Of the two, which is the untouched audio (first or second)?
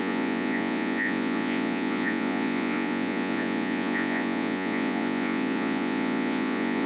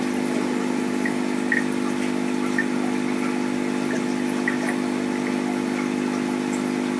second